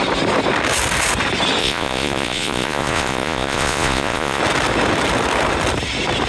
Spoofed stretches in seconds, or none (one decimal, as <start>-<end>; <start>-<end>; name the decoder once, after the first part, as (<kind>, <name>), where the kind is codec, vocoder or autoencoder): 1.6-4.4 (vocoder, Vocos)